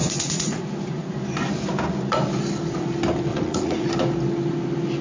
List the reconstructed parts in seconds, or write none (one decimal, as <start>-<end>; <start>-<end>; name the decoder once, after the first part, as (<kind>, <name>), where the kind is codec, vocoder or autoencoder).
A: 0.0-0.6 (vocoder, Vocos); 3.3-3.9